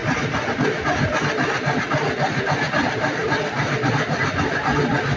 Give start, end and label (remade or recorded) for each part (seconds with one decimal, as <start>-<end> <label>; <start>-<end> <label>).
0.0-5.2 recorded